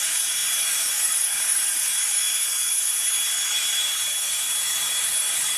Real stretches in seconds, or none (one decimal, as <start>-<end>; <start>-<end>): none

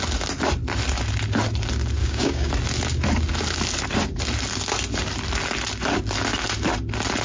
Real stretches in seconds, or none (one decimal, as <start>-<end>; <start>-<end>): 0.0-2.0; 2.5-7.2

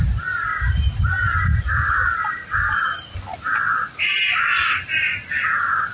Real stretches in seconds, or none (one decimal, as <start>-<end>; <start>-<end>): 0.0-5.9